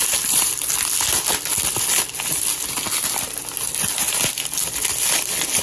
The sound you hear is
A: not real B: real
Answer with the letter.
B